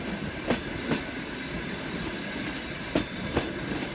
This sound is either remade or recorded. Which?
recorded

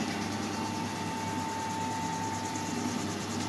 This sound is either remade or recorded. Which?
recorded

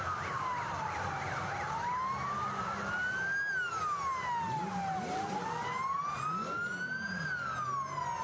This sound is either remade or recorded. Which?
recorded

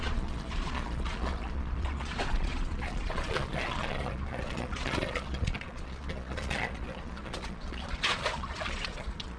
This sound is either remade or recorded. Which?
remade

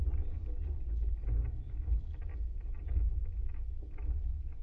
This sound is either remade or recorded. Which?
recorded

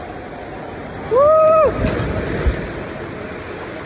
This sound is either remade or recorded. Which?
recorded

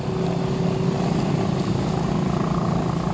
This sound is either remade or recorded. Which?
recorded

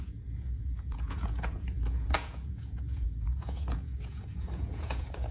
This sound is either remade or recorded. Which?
remade